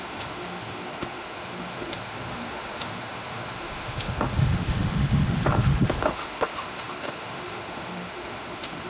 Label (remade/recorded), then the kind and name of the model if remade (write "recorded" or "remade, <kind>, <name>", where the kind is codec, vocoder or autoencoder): remade, autoencoder, DAC-VAE